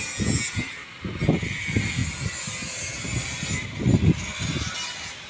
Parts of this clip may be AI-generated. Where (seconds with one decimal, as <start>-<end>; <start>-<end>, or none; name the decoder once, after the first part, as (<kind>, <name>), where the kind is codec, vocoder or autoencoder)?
none